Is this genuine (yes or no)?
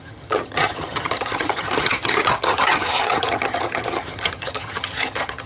no